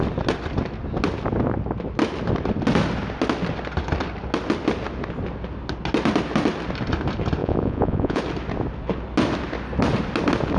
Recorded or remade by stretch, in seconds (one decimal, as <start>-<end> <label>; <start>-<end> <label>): 0.0-7.4 recorded; 7.4-8.2 remade; 8.2-10.6 recorded